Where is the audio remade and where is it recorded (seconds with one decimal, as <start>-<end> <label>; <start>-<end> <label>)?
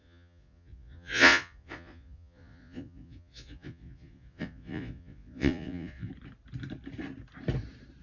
0.0-6.1 remade; 6.1-8.0 recorded